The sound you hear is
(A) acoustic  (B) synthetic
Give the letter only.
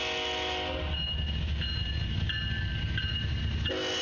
A